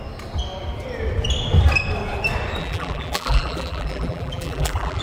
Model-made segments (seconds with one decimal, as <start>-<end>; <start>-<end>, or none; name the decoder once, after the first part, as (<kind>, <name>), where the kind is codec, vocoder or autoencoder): 2.6-5.0 (vocoder, BigVGAN v2)